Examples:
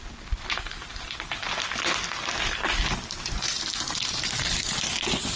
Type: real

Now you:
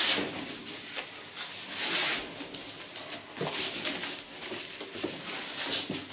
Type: real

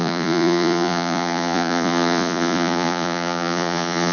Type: fake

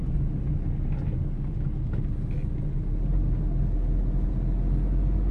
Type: real